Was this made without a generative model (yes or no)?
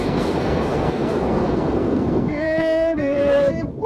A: no